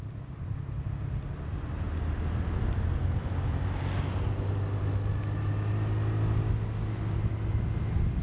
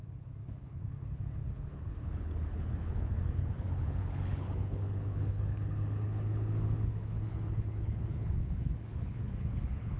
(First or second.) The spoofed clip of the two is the second